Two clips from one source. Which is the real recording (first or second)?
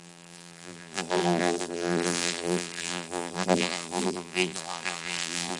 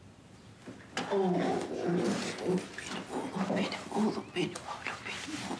second